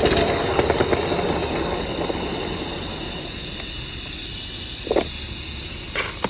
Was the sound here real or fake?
real